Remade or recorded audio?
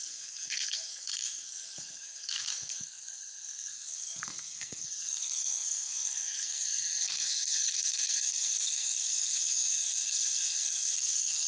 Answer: remade